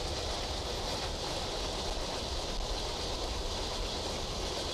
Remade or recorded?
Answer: recorded